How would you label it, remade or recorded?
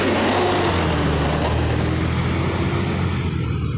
recorded